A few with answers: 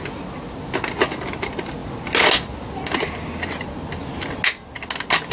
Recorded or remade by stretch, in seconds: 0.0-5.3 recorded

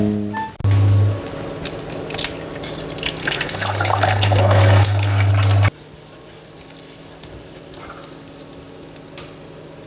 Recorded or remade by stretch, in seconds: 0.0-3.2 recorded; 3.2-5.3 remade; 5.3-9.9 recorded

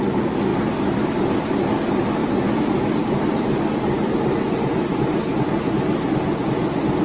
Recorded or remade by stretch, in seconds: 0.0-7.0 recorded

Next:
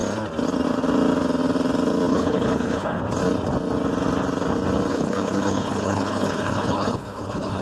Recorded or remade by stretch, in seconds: 0.0-2.1 recorded; 2.1-3.0 remade; 3.0-4.9 recorded; 4.9-7.6 remade

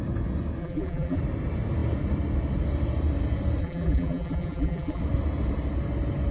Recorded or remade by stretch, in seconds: 0.0-0.6 recorded; 0.6-1.2 remade; 1.2-3.6 recorded; 3.6-5.0 remade; 5.0-6.3 recorded

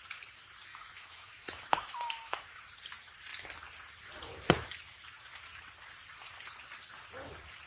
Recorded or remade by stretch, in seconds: 0.0-0.7 recorded; 0.7-2.6 remade; 2.6-7.7 recorded

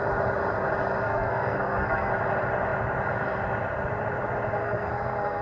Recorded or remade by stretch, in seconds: 0.0-1.0 recorded; 1.0-2.1 remade; 2.1-4.6 recorded; 4.6-5.4 remade

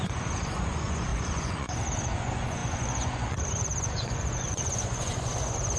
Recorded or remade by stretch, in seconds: 0.0-5.8 remade